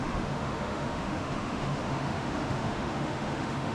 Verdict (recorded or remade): remade